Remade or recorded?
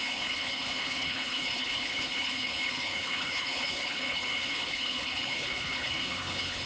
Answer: remade